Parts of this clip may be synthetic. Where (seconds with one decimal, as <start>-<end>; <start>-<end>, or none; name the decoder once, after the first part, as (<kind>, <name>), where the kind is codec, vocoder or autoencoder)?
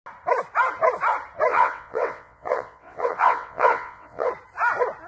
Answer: 1.5-4.3 (vocoder, WaveNeXt)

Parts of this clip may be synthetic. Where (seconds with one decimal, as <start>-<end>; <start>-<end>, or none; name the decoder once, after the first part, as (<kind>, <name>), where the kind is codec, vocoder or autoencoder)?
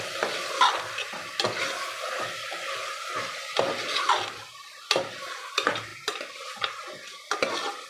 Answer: none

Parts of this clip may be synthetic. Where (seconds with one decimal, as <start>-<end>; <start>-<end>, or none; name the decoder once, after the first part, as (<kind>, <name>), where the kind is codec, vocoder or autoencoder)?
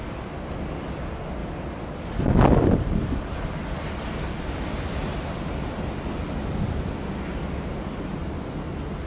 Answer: none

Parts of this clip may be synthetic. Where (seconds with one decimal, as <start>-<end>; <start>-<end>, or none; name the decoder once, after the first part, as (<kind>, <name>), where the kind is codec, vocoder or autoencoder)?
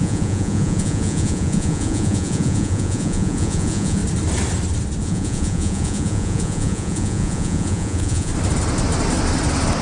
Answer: 0.0-4.0 (vocoder, Vocos); 5.0-8.3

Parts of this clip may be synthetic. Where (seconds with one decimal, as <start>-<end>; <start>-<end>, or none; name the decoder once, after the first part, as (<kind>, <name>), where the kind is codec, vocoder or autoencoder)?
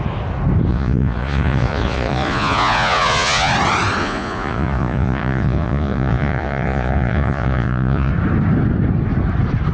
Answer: 0.7-3.5 (vocoder, Vocos); 4.0-8.1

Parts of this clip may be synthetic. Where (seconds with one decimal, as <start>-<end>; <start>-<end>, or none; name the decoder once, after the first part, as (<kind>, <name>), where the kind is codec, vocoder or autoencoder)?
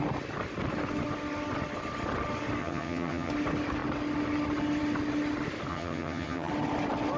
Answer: 2.6-3.3 (vocoder, HiFi-GAN); 5.7-6.5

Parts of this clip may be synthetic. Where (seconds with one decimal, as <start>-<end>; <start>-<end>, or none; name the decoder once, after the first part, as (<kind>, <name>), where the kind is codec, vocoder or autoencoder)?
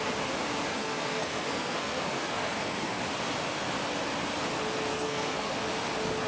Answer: 0.7-3.0 (codec, SNAC); 4.9-5.5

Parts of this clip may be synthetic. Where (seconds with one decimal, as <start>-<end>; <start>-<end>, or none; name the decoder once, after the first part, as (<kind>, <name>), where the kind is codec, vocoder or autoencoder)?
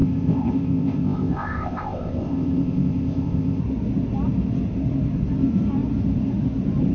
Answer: 0.0-3.6 (codec, ZipCodec)